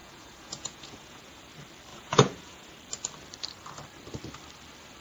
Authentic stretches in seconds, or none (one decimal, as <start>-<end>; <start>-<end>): 1.4-1.9; 2.7-5.0